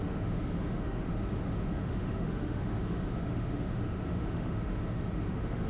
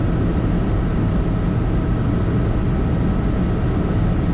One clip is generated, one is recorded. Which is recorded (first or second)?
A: second